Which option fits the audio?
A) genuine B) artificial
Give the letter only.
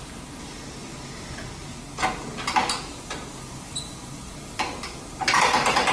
A